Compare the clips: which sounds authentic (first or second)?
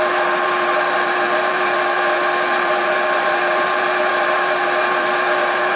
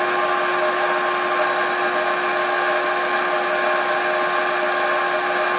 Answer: second